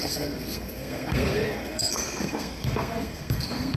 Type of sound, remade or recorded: remade